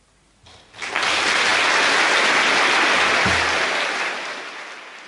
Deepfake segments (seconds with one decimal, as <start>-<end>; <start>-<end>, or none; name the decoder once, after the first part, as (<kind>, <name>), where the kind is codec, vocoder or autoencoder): none